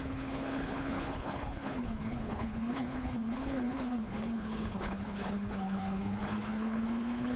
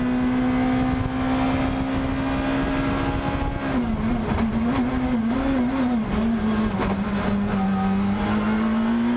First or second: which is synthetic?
first